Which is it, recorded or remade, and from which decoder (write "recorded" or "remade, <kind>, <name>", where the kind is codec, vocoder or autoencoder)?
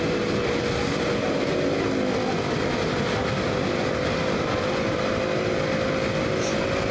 recorded